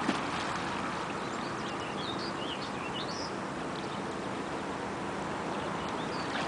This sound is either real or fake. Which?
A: real